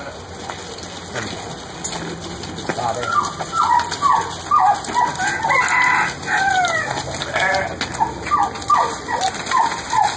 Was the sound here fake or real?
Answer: real